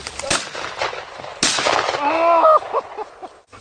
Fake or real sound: real